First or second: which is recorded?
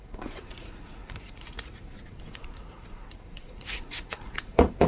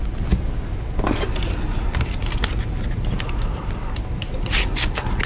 second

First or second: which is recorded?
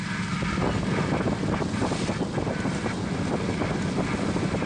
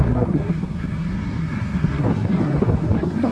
first